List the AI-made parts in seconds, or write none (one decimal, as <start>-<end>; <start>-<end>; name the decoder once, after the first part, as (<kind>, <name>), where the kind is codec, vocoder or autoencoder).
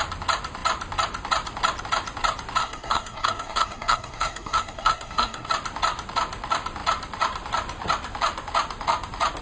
2.6-5.5 (codec, SNAC)